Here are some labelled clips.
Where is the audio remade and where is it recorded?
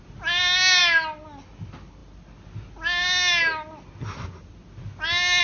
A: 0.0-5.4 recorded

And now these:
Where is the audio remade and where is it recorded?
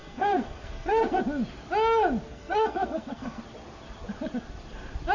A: 0.0-1.2 remade; 1.2-2.3 recorded; 2.3-3.4 remade; 3.4-5.1 recorded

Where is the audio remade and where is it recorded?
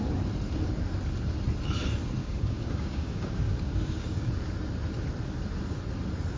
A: 0.0-2.2 recorded; 2.2-4.3 remade; 4.3-6.4 recorded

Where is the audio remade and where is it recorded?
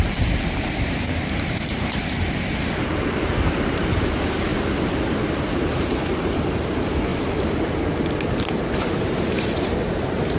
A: 0.0-2.0 remade; 2.0-3.2 recorded; 3.2-4.5 remade; 4.5-5.3 recorded; 5.3-7.1 remade; 7.1-9.0 recorded; 9.0-10.4 remade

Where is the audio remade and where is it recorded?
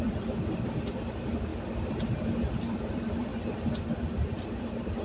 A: 0.0-1.5 remade; 1.5-2.5 recorded; 2.5-3.3 remade; 3.3-3.8 recorded; 3.8-5.0 remade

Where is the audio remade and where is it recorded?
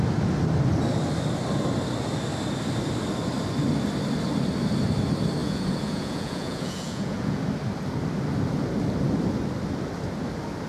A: 0.0-5.4 recorded; 5.4-7.4 remade; 7.4-10.7 recorded